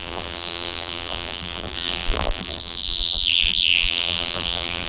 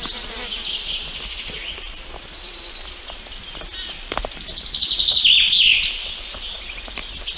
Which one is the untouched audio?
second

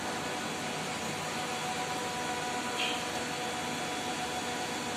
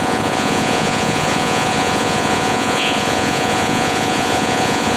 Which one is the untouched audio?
first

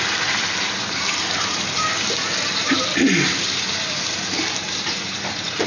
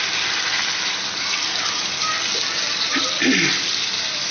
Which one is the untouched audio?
second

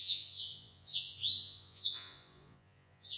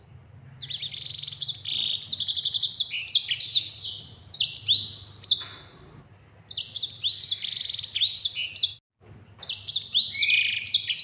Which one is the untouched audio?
second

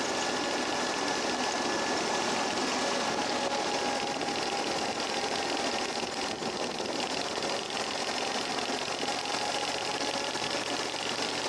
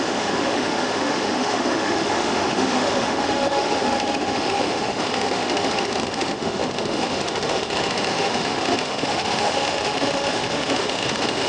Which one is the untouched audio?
first